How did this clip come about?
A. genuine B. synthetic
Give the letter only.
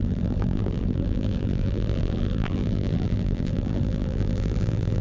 B